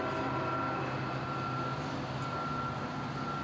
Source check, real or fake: real